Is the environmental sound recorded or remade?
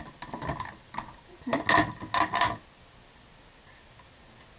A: recorded